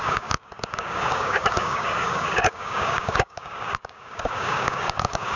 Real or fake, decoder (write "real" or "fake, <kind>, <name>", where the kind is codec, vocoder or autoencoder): fake, codec, DAC